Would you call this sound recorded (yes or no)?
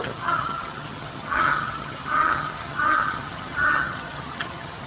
no